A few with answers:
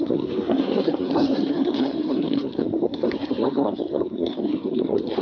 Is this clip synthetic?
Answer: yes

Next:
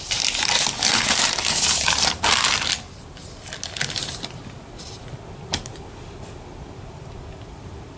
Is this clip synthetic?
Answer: no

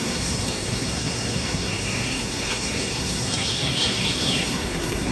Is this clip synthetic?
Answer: yes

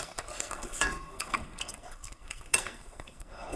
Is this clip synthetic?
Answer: yes